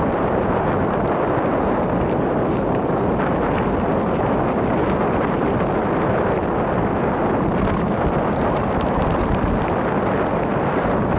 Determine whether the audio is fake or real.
real